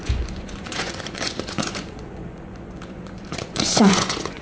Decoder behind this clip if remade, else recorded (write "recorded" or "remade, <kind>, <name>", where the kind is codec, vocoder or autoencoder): remade, vocoder, Vocos